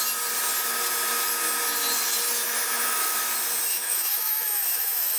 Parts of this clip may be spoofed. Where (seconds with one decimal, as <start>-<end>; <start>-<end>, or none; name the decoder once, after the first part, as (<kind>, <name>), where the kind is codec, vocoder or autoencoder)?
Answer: 2.6-3.2 (autoencoder, DAC-VAE); 3.7-5.2